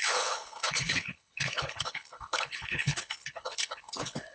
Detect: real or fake fake